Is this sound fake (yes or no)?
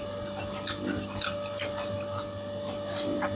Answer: no